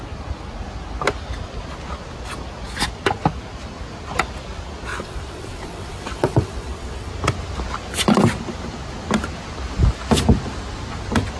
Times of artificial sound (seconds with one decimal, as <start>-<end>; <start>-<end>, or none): 4.9-7.1